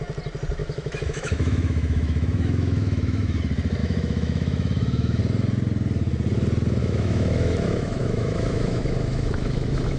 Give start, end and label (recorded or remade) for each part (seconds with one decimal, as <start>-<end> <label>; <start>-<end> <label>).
0.0-0.6 recorded; 0.6-3.4 remade; 3.4-3.8 recorded; 3.8-5.2 remade; 5.2-6.8 recorded; 6.8-10.0 remade